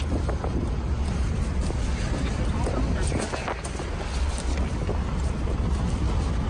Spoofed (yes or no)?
no